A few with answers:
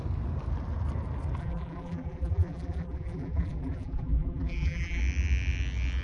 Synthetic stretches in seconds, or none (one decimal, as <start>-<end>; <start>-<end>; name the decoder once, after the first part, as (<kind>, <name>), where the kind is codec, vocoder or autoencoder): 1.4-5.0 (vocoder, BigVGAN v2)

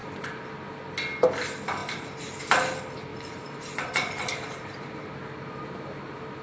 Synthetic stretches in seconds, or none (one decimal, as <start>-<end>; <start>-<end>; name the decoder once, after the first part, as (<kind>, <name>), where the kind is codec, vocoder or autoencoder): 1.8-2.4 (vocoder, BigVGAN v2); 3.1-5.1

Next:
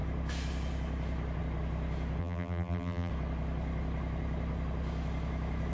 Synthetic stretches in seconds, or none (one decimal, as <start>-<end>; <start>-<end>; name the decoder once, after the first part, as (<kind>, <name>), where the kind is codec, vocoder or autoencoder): 2.2-3.1 (vocoder, BigVGAN v2)

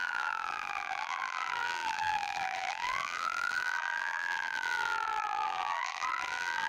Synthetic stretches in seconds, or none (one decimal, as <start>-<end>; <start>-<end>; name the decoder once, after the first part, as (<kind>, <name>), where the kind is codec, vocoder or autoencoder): 0.0-6.7 (vocoder, BigVGAN v2)